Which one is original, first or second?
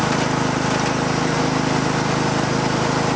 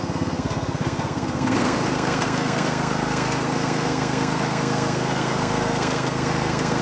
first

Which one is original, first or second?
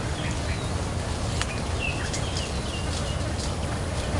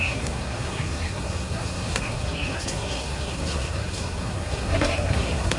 first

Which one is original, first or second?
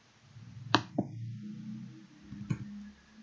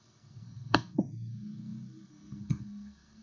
first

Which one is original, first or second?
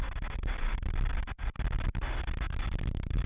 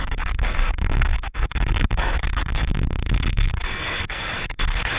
first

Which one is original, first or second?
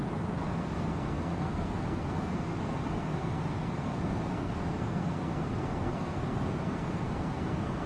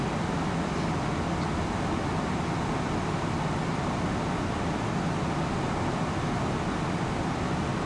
second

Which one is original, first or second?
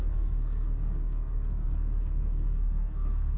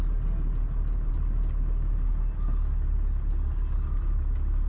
second